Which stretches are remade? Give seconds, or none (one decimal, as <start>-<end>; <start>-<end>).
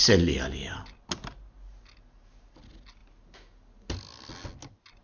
none